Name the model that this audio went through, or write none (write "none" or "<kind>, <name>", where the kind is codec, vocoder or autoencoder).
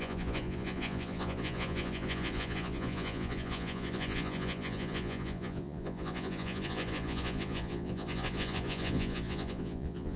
vocoder, Vocos